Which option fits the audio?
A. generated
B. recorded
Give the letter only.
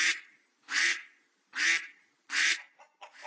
A